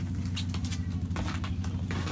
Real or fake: real